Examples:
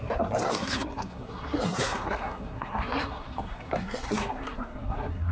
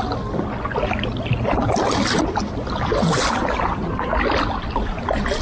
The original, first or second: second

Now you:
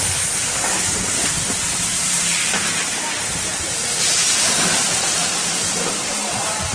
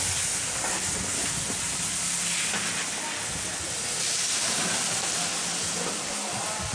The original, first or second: second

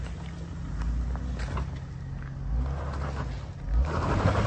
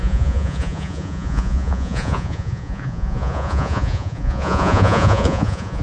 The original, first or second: first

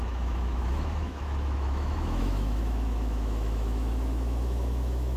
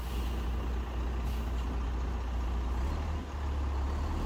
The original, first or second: second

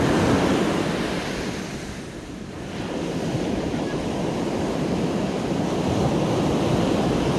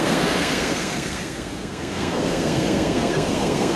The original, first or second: first